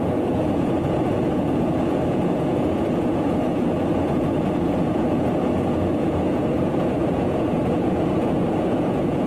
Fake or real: fake